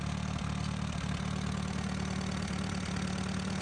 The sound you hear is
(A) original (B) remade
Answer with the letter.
A